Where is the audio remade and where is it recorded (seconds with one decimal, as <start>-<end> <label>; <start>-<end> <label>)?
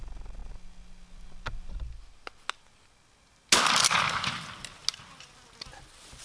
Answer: 0.0-6.2 recorded